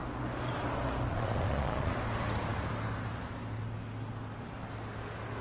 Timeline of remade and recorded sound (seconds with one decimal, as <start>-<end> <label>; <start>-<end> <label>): 0.0-1.1 recorded; 1.1-1.9 remade; 1.9-5.4 recorded